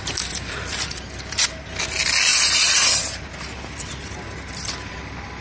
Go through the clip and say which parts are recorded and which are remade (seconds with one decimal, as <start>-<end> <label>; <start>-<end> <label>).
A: 0.0-5.4 recorded

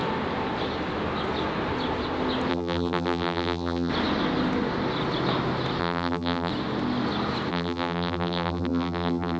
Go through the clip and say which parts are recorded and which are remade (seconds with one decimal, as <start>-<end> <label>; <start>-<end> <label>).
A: 0.0-2.5 recorded; 2.5-3.9 remade; 3.9-5.8 recorded; 5.8-6.5 remade; 6.5-7.5 recorded; 7.5-9.4 remade

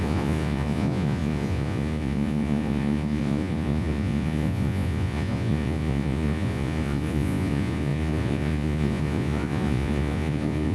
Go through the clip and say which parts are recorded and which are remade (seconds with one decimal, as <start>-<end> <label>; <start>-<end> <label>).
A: 0.0-10.7 remade